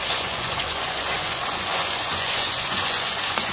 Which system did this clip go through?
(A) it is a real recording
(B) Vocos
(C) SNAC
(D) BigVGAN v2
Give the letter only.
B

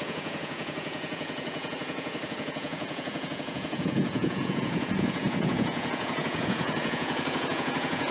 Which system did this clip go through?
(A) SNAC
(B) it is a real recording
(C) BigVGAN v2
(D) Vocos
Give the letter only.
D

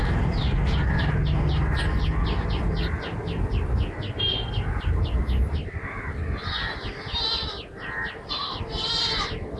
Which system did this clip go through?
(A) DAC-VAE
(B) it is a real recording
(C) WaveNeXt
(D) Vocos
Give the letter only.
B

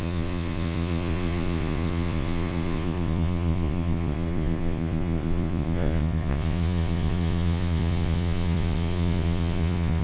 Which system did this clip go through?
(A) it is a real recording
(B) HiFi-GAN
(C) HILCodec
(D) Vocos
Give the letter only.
D